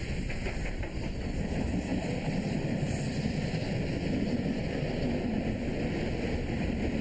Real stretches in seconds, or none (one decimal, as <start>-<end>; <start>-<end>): 0.0-7.0